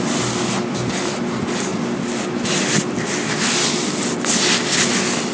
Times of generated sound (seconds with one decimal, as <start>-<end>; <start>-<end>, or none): none